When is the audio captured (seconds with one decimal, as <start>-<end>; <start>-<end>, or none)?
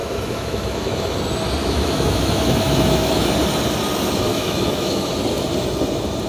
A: 1.2-1.6; 3.3-4.3; 5.1-6.3